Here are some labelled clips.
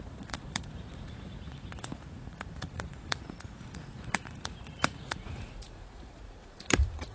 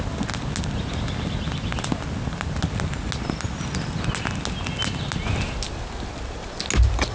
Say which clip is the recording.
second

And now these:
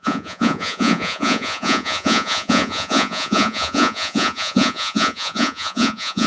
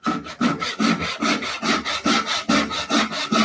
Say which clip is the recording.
second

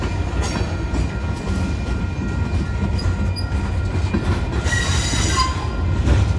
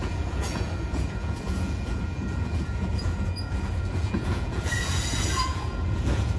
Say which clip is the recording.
first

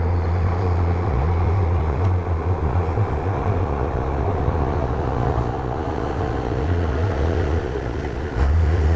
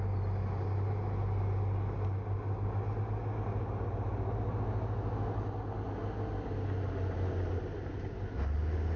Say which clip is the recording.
second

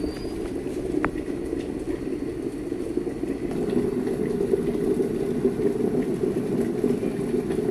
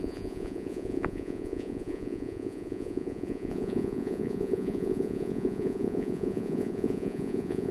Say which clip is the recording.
first